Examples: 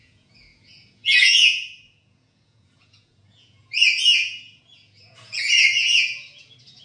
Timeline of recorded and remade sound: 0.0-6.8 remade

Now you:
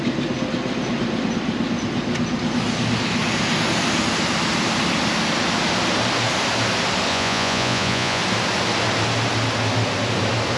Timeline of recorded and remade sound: 0.0-7.1 recorded; 7.1-8.2 remade; 8.2-10.6 recorded